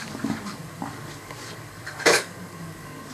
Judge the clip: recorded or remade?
remade